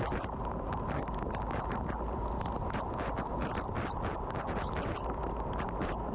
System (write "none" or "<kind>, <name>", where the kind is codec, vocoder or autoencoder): none